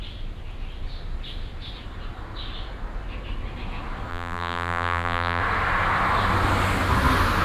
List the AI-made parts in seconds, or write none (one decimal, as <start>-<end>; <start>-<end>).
4.1-5.4